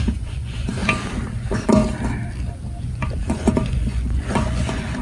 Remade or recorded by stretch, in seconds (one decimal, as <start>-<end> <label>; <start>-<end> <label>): 0.0-0.8 remade; 0.8-1.3 recorded; 1.3-1.8 remade; 1.8-2.8 recorded; 2.8-5.0 remade